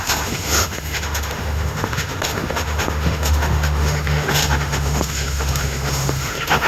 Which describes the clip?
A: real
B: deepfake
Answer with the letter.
B